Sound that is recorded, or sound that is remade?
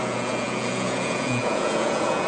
remade